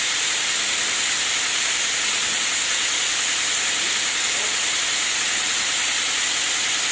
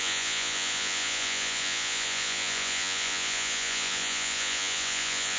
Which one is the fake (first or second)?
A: second